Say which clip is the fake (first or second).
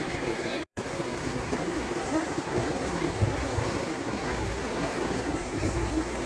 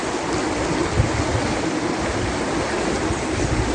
first